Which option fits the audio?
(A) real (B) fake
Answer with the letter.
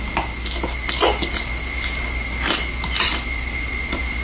A